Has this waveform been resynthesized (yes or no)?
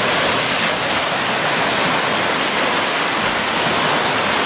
no